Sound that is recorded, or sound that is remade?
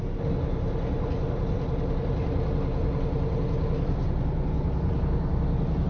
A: recorded